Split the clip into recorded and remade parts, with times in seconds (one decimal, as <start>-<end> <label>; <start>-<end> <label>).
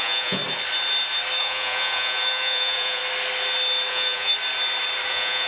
0.0-0.4 remade; 0.4-1.4 recorded; 1.4-3.0 remade; 3.0-3.9 recorded; 3.9-4.3 remade; 4.3-5.1 recorded; 5.1-5.5 remade